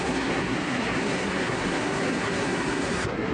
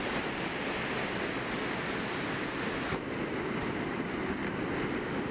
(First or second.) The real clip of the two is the second